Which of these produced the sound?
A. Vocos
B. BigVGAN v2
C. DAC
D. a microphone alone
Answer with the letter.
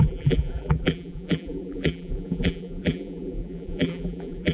B